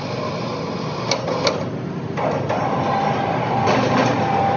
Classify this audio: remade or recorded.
recorded